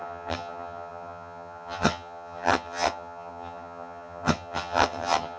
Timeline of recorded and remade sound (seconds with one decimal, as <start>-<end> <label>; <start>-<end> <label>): 0.0-5.4 remade